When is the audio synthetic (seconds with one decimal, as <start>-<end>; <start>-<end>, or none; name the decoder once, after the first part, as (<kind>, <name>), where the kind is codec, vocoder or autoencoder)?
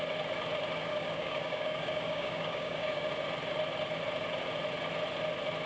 0.9-3.1 (codec, DAC)